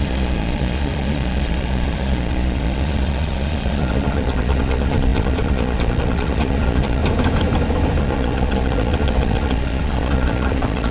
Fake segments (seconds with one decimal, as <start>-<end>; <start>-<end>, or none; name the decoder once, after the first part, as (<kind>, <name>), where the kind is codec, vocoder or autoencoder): 0.0-7.0 (vocoder, Vocos); 8.0-10.9